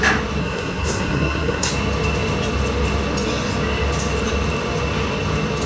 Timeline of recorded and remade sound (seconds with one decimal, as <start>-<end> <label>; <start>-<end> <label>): 0.0-0.4 recorded; 0.4-1.7 remade; 1.7-5.7 recorded